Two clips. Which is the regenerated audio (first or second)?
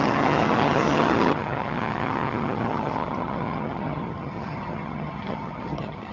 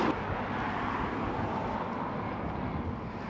first